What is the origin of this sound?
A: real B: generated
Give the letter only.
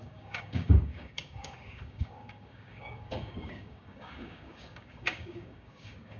B